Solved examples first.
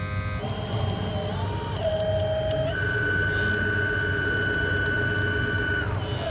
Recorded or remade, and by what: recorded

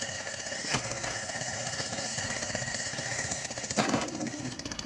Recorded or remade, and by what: remade, codec, SNAC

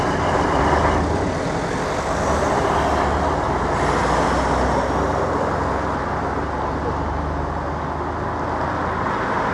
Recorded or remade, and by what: recorded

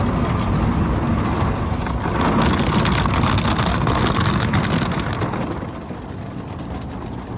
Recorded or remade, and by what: recorded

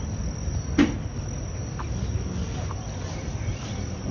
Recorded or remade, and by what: recorded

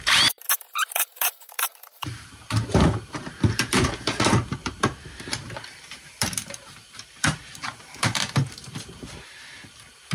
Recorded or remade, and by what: remade, vocoder, BigVGAN v2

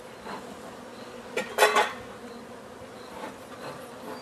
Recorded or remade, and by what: recorded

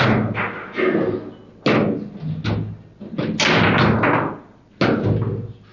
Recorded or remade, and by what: recorded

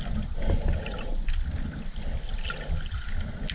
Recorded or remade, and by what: recorded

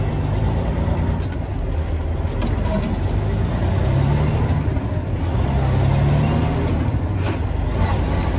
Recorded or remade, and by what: recorded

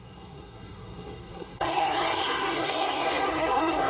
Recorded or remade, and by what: remade, codec, SNAC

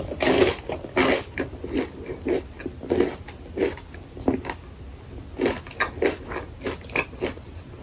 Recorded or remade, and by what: recorded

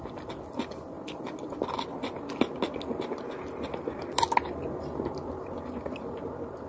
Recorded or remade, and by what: recorded